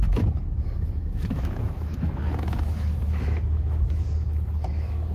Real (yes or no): no